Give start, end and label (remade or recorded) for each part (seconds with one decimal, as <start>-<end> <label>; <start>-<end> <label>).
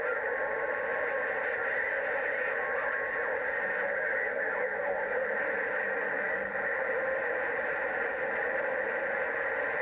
0.0-9.8 recorded